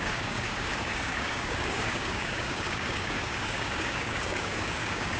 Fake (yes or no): yes